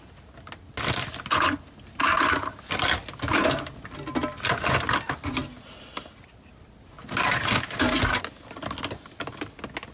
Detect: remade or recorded recorded